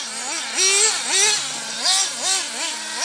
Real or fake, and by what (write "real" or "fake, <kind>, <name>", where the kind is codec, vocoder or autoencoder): real